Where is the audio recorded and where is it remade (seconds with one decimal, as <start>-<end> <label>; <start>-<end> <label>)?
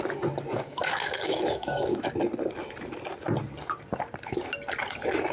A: 0.0-0.7 recorded; 0.7-2.1 remade; 2.1-5.3 recorded